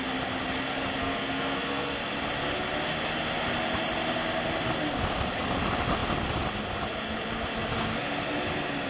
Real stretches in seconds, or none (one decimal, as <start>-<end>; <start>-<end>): 0.0-1.0; 2.1-8.9